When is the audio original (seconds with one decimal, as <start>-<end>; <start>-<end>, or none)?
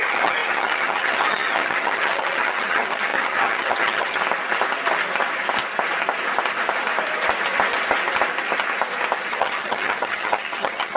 4.2-9.3